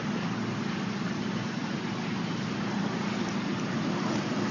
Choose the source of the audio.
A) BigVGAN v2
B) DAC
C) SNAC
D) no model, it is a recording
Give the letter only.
D